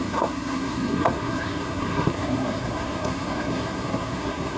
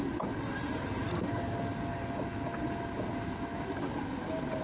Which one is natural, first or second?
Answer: second